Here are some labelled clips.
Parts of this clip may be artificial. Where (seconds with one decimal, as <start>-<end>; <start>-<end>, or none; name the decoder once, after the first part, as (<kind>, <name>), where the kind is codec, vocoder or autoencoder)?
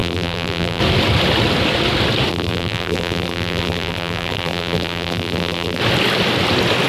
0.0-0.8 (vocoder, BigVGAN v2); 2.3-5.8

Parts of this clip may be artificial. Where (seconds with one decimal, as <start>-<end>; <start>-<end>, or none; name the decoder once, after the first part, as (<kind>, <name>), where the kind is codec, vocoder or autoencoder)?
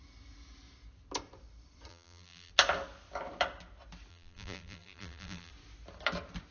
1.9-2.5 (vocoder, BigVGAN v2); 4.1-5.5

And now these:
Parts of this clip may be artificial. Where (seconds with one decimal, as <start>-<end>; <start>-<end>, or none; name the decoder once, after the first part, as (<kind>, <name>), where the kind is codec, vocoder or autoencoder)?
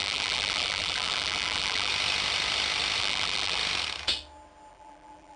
0.0-1.9 (vocoder, BigVGAN v2); 3.0-3.6; 4.7-5.4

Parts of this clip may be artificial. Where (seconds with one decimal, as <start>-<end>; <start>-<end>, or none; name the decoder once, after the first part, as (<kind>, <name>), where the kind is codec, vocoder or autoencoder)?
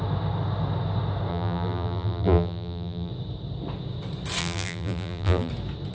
1.3-3.1 (vocoder, BigVGAN v2); 4.4-5.5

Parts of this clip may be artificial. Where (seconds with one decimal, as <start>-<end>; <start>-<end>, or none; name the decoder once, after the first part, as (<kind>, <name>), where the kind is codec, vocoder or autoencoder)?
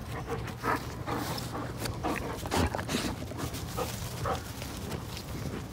none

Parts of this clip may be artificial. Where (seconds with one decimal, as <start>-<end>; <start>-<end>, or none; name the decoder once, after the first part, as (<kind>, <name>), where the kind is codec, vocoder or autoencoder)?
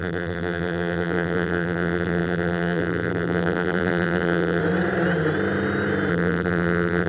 0.0-4.6 (vocoder, BigVGAN v2); 6.1-7.1